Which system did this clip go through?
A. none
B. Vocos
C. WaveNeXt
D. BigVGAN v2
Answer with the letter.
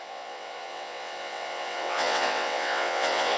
C